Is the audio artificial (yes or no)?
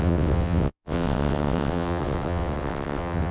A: yes